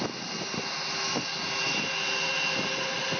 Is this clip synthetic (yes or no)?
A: no